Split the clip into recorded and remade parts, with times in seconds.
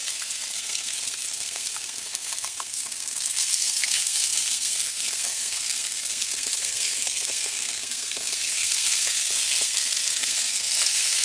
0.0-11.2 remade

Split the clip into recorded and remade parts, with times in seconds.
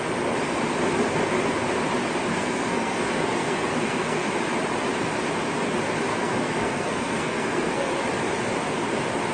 0.0-2.3 recorded; 2.3-4.3 remade; 4.3-6.1 recorded; 6.1-7.9 remade; 7.9-9.3 recorded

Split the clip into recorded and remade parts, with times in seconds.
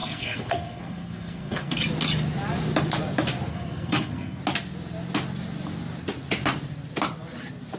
0.0-1.8 remade; 1.8-3.5 recorded; 3.5-4.4 remade; 4.4-7.8 recorded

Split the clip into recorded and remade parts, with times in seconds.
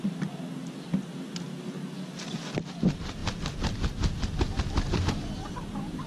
0.0-6.1 recorded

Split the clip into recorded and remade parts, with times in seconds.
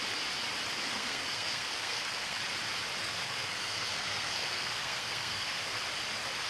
0.0-0.9 recorded; 0.9-2.4 remade; 2.4-3.0 recorded; 3.0-5.8 remade; 5.8-6.5 recorded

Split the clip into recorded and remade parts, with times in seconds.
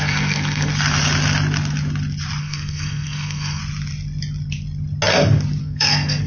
0.0-0.7 remade; 0.7-2.4 recorded; 2.4-3.6 remade; 3.6-5.6 recorded; 5.6-6.3 remade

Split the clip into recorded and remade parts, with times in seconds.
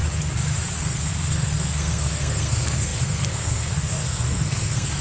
0.0-0.8 recorded; 0.8-5.0 remade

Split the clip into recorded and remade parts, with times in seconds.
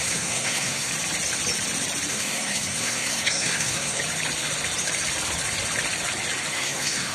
0.0-0.9 remade; 0.9-2.1 recorded; 2.1-4.0 remade; 4.0-6.5 recorded; 6.5-7.1 remade